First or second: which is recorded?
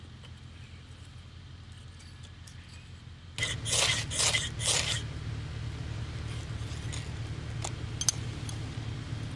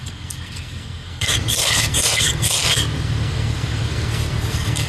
first